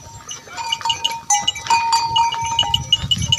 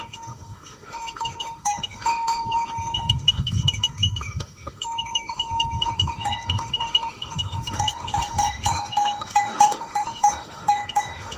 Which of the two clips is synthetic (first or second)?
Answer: second